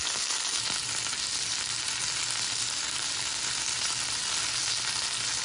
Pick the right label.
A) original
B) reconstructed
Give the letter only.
A